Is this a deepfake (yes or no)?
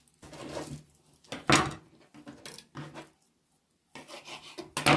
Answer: no